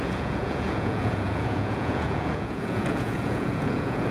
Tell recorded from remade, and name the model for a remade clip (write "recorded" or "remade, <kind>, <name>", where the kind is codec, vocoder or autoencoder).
remade, vocoder, Vocos